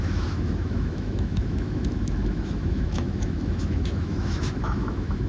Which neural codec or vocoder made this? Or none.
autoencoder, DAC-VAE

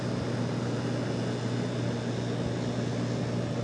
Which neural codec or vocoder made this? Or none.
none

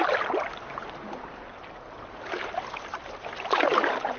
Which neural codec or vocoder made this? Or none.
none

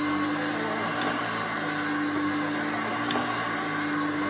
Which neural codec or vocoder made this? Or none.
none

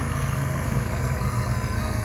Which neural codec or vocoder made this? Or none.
codec, SNAC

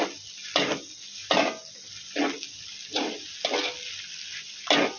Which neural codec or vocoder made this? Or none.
none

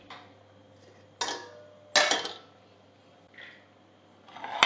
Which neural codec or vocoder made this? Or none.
none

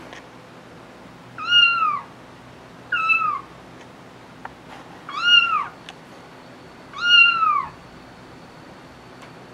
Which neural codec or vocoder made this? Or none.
none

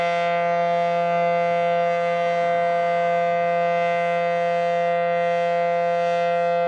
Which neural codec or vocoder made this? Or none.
none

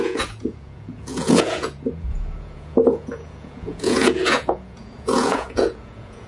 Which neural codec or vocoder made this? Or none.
vocoder, Vocos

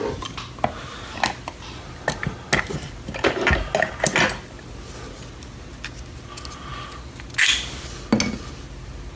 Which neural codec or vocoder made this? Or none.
none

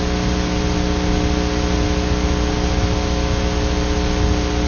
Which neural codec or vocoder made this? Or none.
none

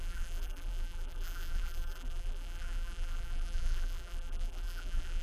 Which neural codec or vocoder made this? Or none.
vocoder, BigVGAN v2